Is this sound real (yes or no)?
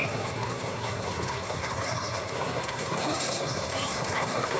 no